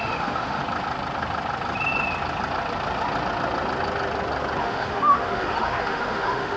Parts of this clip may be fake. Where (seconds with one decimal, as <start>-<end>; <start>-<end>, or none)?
0.0-0.6; 4.6-6.6